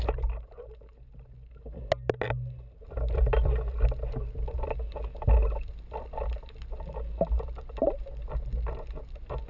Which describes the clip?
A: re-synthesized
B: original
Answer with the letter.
B